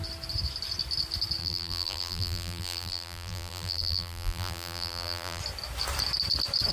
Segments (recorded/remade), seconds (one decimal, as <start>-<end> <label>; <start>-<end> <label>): 0.0-1.4 recorded; 1.4-5.4 remade; 5.4-6.7 recorded